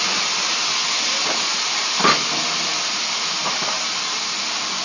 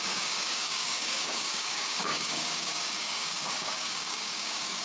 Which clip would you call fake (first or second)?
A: second